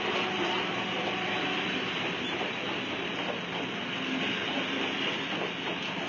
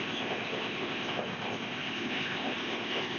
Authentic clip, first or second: first